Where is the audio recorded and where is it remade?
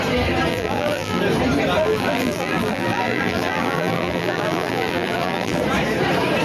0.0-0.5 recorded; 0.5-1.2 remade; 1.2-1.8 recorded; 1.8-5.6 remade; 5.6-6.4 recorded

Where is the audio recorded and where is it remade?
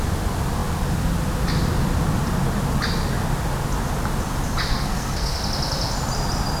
0.0-4.7 recorded; 4.7-5.4 remade; 5.4-6.6 recorded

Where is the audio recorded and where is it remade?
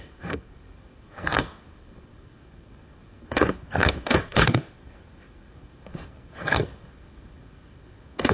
0.0-8.3 remade